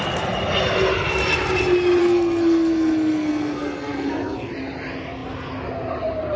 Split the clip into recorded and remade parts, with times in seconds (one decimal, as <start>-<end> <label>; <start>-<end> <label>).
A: 0.0-2.0 recorded; 2.0-4.5 remade; 4.5-6.4 recorded